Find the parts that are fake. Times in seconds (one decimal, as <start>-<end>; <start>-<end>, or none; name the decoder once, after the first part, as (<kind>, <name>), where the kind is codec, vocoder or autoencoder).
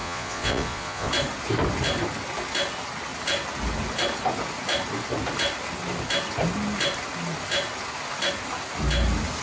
0.0-1.1 (vocoder, Vocos)